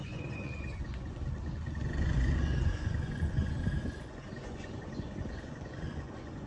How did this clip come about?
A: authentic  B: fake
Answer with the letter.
B